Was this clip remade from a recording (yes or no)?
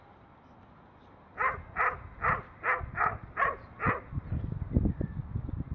no